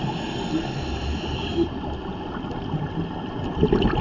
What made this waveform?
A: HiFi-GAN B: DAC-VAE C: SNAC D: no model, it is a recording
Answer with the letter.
D